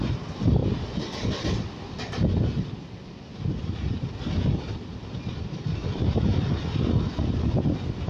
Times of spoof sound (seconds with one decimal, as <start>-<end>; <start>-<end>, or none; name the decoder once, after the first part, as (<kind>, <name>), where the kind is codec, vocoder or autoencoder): none